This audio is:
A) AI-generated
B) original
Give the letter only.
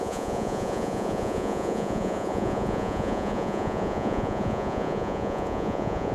A